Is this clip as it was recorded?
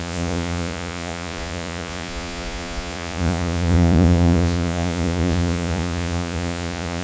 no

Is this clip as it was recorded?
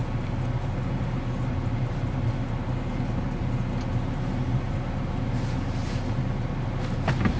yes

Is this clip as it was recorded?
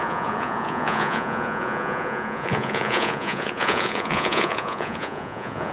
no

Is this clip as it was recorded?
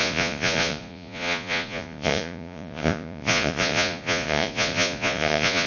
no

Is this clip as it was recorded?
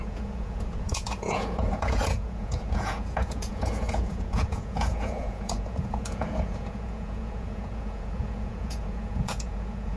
no